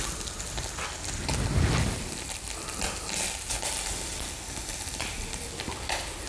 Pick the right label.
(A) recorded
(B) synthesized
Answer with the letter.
A